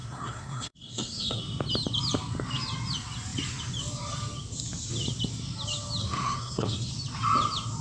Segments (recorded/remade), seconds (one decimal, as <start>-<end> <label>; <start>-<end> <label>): 0.0-1.4 remade; 1.4-6.0 recorded; 6.0-6.9 remade; 6.9-7.8 recorded